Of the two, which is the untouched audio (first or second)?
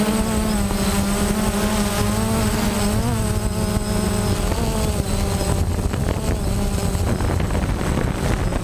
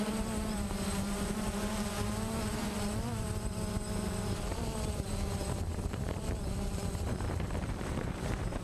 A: first